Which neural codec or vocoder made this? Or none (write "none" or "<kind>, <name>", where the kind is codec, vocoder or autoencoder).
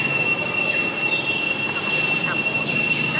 none